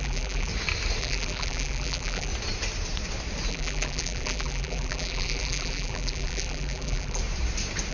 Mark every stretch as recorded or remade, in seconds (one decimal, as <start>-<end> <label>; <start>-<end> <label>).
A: 0.0-0.5 remade; 0.5-1.0 recorded; 1.0-2.3 remade; 2.3-3.5 recorded; 3.5-7.2 remade; 7.2-7.9 recorded